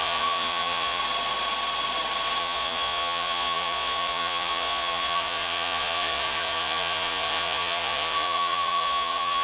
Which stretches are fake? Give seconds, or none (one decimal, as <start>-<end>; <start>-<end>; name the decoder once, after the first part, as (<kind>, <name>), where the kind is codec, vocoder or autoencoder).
0.0-1.0 (vocoder, Vocos); 2.4-9.4